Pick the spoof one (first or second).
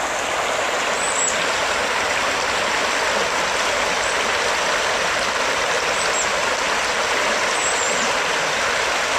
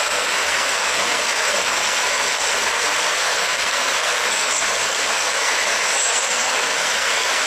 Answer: second